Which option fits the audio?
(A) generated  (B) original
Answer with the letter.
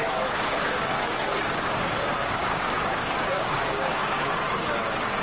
A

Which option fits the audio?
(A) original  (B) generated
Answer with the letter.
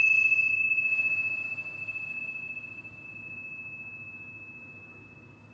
A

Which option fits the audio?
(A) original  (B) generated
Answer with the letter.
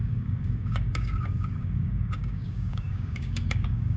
B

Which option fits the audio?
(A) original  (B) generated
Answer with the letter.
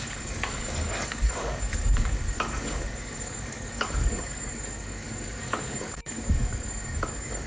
B